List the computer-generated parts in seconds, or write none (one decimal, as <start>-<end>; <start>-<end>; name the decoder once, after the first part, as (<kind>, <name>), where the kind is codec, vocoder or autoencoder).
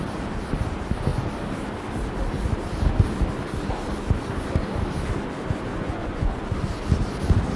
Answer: 5.7-6.3 (vocoder, Vocos)